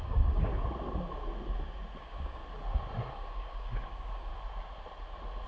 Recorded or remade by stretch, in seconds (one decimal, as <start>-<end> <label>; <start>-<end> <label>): 0.0-0.5 remade; 0.5-2.0 recorded; 2.0-2.4 remade; 2.4-3.1 recorded; 3.1-4.3 remade; 4.3-5.5 recorded